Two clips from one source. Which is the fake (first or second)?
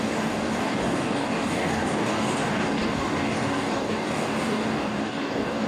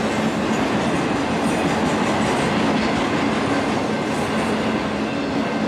first